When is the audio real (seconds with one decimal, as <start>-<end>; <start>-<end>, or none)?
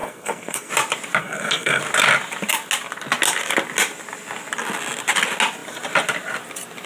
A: 0.7-1.2; 1.8-6.9